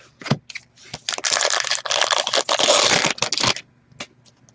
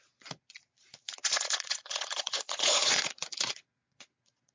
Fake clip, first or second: second